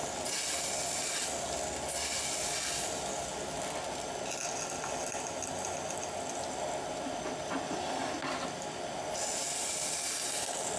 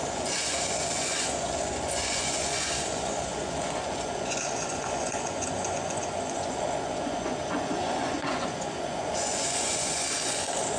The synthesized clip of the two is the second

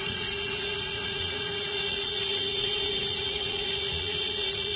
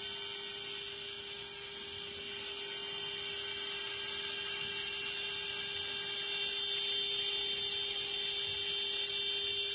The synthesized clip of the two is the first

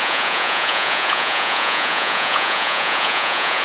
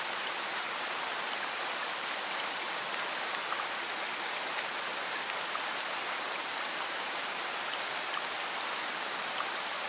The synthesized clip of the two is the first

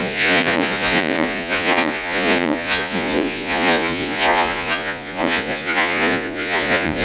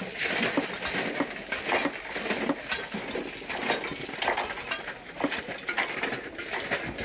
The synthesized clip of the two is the first